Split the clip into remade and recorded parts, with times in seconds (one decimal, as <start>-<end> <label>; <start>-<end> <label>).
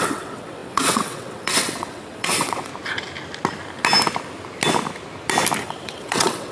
0.0-2.7 remade; 2.7-5.6 recorded; 5.6-6.5 remade